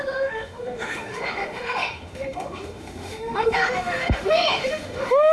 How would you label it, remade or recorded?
remade